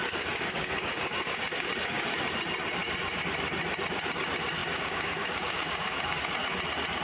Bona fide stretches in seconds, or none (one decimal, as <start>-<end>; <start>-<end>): 1.7-4.6; 6.3-7.0